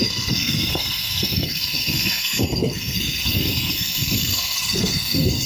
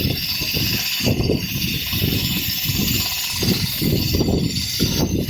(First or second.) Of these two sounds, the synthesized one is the first